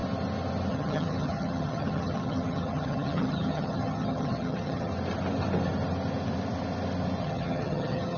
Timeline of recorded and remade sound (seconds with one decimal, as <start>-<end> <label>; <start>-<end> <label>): 0.0-0.7 recorded; 0.7-4.9 remade; 4.9-7.2 recorded; 7.2-8.2 remade